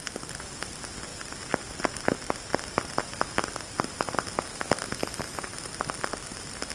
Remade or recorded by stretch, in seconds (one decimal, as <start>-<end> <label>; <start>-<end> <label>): 0.0-6.7 recorded